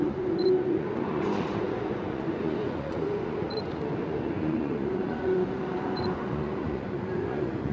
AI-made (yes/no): yes